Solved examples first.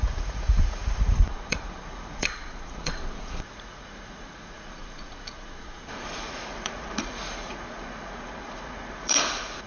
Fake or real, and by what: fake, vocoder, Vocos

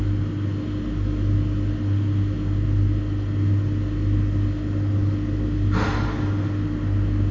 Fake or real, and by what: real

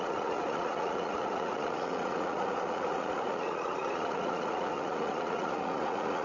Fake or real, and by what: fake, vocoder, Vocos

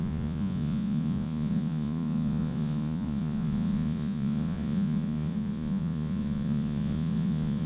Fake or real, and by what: fake, vocoder, Vocos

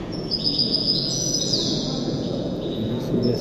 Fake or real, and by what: fake, vocoder, Vocos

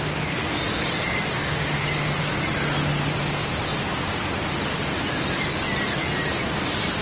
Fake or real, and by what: real